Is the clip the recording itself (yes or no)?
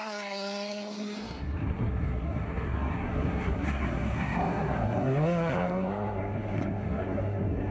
no